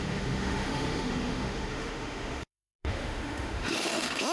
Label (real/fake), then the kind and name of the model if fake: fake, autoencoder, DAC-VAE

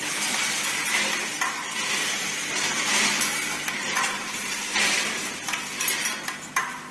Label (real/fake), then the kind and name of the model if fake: real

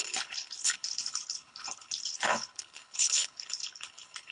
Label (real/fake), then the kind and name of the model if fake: fake, codec, HILCodec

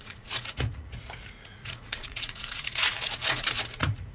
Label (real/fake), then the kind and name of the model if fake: fake, vocoder, Vocos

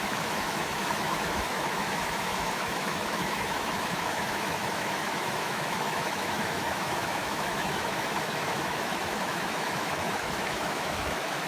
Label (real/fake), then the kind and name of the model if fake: fake, autoencoder, DAC-VAE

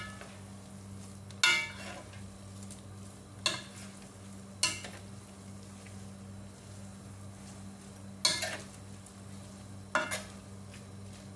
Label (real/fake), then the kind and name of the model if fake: real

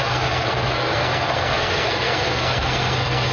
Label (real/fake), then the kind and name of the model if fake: fake, codec, SNAC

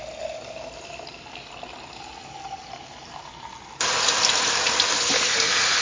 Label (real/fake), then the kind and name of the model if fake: real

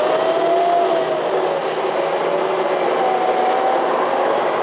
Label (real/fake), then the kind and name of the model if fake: real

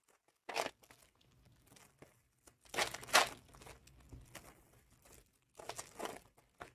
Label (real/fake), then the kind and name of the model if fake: real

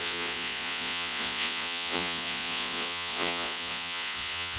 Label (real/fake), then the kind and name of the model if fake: fake, vocoder, Vocos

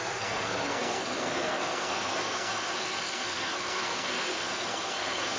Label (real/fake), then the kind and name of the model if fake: fake, codec, SNAC